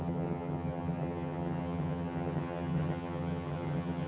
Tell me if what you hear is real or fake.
fake